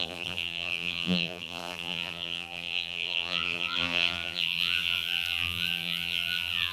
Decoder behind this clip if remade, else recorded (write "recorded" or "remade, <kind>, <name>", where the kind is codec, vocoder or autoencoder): remade, vocoder, BigVGAN v2